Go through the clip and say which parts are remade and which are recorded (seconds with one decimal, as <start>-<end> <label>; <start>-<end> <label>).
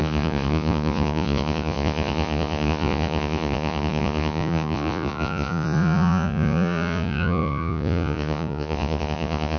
0.0-9.6 remade